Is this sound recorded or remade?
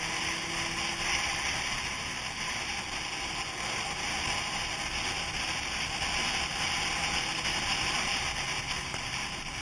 recorded